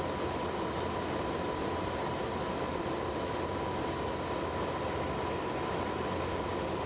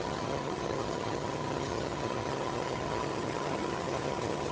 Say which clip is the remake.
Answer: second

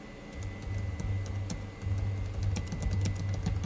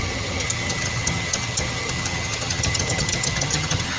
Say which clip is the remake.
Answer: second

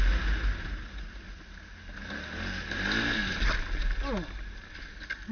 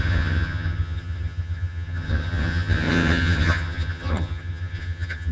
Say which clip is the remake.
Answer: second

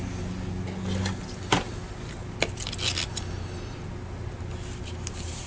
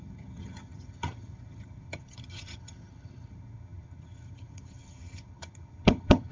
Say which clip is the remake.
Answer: second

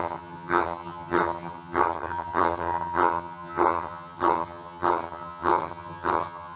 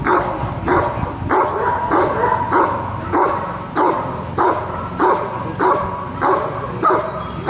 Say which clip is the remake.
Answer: first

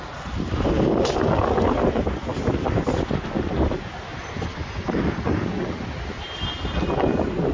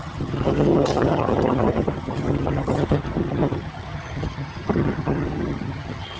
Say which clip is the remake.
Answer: second